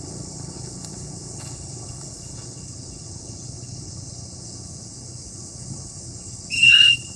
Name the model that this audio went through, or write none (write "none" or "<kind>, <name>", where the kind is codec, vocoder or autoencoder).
codec, HILCodec